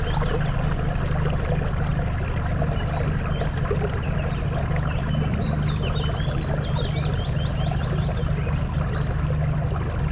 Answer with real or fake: real